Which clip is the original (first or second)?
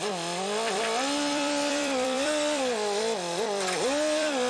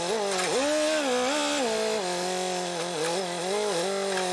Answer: second